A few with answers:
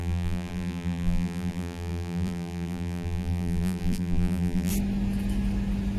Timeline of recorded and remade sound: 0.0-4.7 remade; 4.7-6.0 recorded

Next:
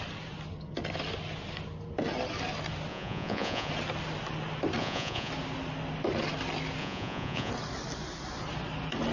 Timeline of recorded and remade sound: 0.0-2.9 recorded; 2.9-3.7 remade; 3.7-4.8 recorded; 4.8-5.3 remade; 5.3-6.8 recorded; 6.8-7.5 remade; 7.5-9.1 recorded

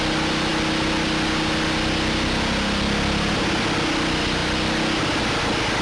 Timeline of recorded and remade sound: 0.0-5.8 recorded

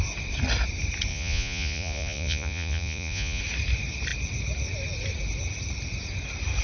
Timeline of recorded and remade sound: 0.0-1.1 recorded; 1.1-3.4 remade; 3.4-6.6 recorded

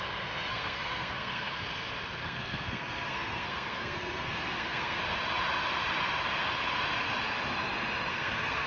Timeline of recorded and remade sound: 0.0-0.5 recorded; 0.5-1.6 remade; 1.6-2.2 recorded; 2.2-5.0 remade; 5.0-8.1 recorded; 8.1-8.7 remade

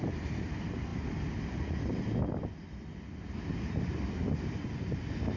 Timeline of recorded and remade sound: 0.0-5.4 recorded

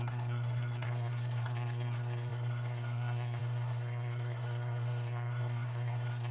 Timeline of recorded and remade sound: 0.0-6.3 remade